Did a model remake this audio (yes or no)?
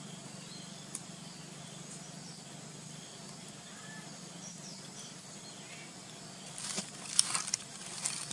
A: no